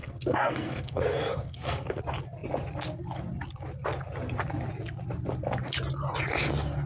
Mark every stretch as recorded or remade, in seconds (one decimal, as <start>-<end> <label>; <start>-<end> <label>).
0.0-2.0 remade; 2.0-6.9 recorded